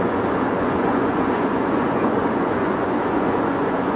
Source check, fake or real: fake